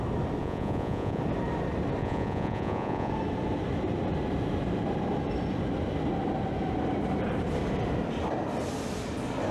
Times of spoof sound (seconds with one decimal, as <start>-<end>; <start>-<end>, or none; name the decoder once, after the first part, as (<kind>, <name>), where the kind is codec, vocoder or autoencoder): 0.4-1.2 (vocoder, Vocos); 2.0-3.1